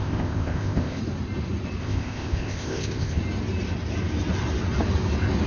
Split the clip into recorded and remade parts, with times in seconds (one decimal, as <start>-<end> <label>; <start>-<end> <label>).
0.0-1.0 remade; 1.0-1.8 recorded; 1.8-3.2 remade; 3.2-5.5 recorded